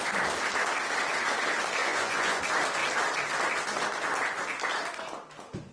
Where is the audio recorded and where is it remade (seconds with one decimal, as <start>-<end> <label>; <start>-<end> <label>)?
0.0-1.8 recorded; 1.8-2.4 remade; 2.4-5.7 recorded